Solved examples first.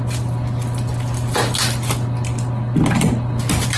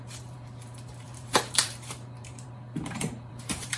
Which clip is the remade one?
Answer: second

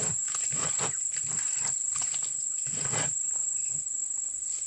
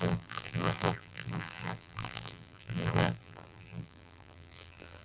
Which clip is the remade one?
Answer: second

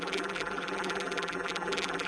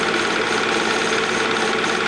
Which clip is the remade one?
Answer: first